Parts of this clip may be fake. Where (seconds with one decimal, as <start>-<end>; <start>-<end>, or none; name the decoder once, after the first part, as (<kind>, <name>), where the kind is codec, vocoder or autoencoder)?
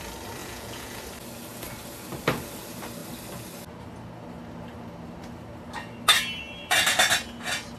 0.4-1.0 (vocoder, Vocos)